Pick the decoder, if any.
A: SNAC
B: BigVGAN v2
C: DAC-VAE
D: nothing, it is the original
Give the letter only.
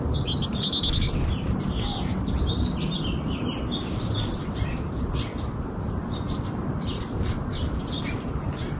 D